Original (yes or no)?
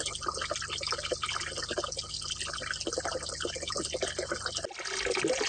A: yes